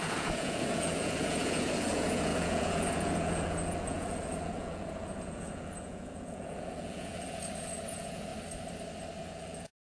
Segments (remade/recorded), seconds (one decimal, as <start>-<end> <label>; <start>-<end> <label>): 0.0-8.3 remade; 8.3-9.2 recorded; 9.2-9.8 remade